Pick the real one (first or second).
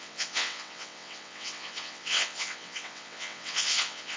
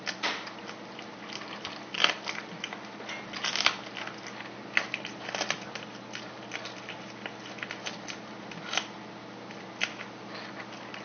second